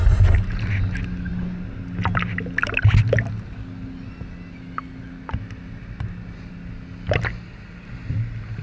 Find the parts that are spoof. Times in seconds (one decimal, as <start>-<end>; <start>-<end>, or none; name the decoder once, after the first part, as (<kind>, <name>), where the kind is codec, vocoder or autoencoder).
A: none